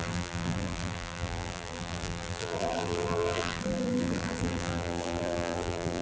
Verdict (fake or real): fake